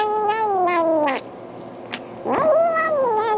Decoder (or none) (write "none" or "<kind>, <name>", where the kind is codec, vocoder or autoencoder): none